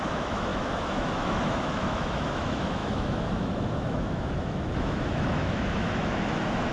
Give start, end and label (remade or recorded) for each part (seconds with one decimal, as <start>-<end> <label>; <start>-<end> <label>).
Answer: 0.0-6.7 remade